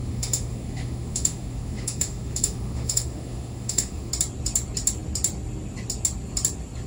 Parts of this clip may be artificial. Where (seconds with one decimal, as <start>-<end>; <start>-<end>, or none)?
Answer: 0.0-4.1